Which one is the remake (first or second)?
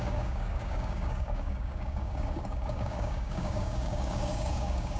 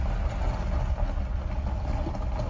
first